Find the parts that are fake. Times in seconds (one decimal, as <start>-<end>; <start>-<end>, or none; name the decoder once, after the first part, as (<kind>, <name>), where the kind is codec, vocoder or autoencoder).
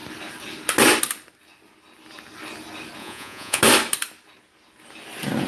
3.0-3.6 (vocoder, Vocos)